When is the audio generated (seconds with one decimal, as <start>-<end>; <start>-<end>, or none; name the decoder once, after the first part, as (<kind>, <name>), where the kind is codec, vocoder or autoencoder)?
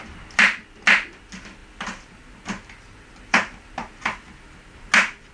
none